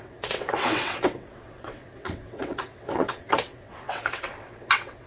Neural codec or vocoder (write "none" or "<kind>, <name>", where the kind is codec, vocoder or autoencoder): vocoder, WaveNeXt